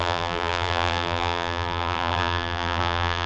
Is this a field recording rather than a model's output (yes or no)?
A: no